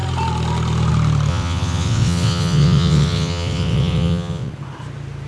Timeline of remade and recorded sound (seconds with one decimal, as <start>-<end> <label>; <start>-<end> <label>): 0.0-1.3 recorded; 1.3-4.5 remade; 4.5-5.3 recorded